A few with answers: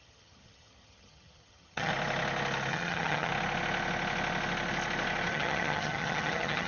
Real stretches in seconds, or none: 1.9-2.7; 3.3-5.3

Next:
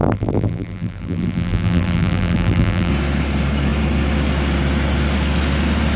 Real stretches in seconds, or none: 2.9-6.0

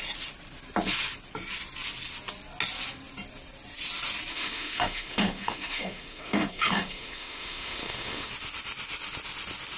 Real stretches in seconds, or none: 0.0-4.3; 8.3-9.8

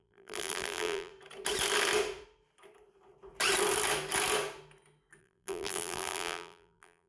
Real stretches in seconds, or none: 1.1-5.2

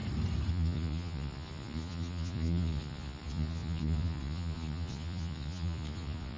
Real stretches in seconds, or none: 0.0-0.5

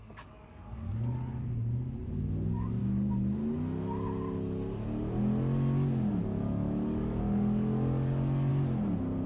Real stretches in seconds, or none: 2.8-6.4; 8.5-9.3